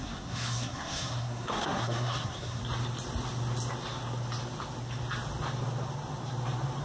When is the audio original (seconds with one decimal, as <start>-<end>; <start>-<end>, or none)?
2.6-6.8